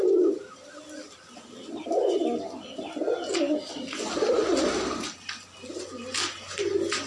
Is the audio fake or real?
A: real